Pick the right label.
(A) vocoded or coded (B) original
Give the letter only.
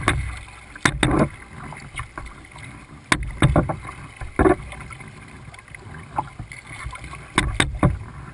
B